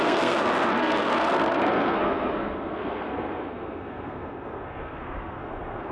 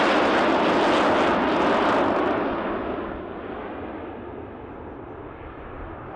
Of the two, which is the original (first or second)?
second